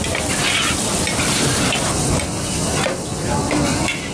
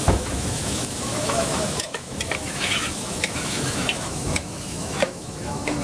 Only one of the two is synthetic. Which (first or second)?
second